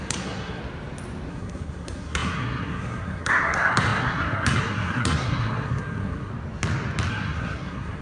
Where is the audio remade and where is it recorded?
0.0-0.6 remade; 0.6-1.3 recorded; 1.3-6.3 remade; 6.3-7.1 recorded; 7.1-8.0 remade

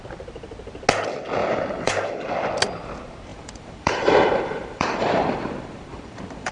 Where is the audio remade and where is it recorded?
0.0-1.4 recorded; 1.4-2.1 remade; 2.1-3.3 recorded; 3.3-6.5 remade

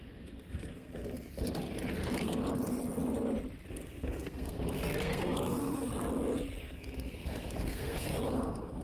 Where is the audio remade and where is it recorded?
0.0-1.0 remade; 1.0-2.0 recorded; 2.0-2.4 remade; 2.4-3.7 recorded; 3.7-5.9 remade; 5.9-6.6 recorded; 6.6-8.8 remade

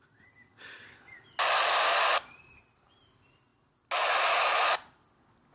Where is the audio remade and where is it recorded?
0.0-0.5 remade; 0.5-2.3 recorded; 2.3-3.5 remade; 3.5-5.5 recorded